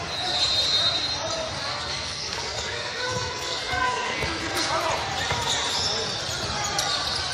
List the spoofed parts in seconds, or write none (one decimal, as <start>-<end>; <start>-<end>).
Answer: 1.7-4.7